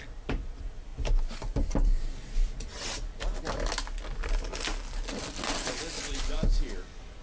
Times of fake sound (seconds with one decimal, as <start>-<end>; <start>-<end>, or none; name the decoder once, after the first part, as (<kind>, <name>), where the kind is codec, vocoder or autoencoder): none